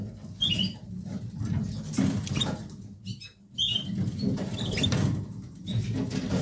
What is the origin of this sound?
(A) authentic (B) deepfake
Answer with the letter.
A